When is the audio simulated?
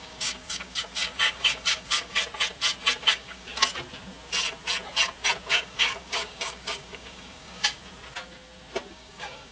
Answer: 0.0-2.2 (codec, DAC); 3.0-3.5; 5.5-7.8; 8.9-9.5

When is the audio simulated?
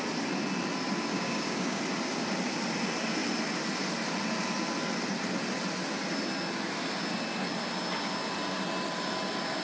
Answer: 1.1-1.8 (codec, DAC)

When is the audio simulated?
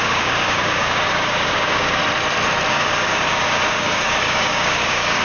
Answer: 0.0-2.0 (codec, DAC); 2.7-5.2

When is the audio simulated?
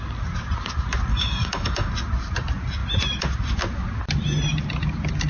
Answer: 1.1-1.9 (codec, DAC)